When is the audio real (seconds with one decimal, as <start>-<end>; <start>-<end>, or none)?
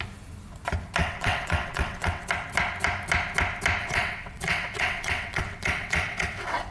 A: 0.0-1.0; 2.3-3.8